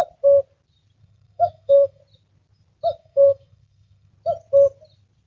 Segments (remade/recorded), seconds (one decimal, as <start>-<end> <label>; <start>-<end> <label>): 0.0-1.0 recorded; 1.0-2.0 remade; 2.0-3.0 recorded; 3.0-4.1 remade; 4.1-5.3 recorded